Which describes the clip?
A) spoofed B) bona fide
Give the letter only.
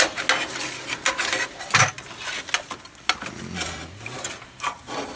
B